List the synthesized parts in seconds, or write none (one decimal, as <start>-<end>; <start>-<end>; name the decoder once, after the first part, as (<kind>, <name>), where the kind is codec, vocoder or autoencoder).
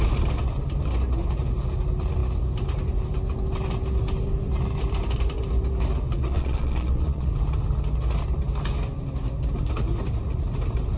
6.2-7.3 (vocoder, Vocos)